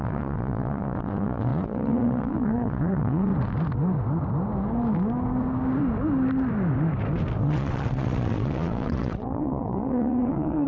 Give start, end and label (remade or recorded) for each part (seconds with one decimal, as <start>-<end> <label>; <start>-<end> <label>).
0.0-3.3 remade; 3.3-7.4 recorded; 7.4-10.7 remade